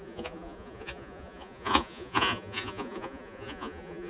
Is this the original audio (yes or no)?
no